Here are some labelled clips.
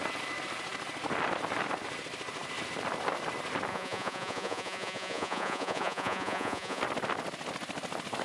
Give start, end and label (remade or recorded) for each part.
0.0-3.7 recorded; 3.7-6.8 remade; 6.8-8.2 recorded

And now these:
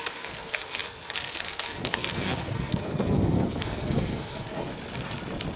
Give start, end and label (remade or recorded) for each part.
0.0-4.7 remade; 4.7-5.6 recorded

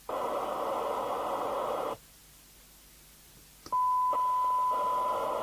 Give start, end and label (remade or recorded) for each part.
0.0-5.4 recorded

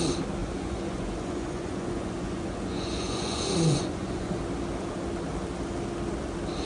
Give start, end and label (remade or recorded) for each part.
0.0-0.4 recorded; 0.4-4.4 remade; 4.4-6.7 recorded